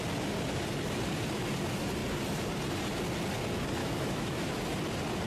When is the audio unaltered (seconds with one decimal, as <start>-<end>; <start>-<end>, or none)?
0.0-3.8; 4.5-5.3